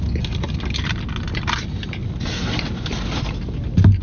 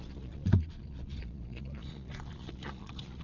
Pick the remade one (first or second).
second